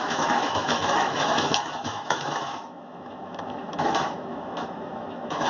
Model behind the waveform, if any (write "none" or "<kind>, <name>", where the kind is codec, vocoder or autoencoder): autoencoder, DAC-VAE